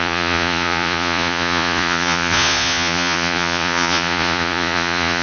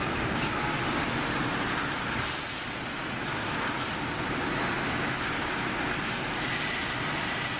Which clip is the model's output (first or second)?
first